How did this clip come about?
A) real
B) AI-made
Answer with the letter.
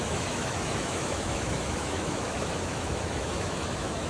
B